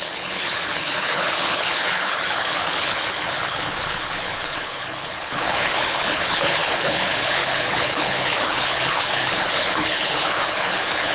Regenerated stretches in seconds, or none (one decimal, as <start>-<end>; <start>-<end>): 0.0-11.1